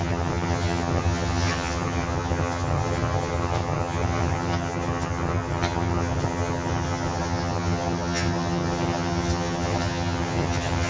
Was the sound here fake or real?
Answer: fake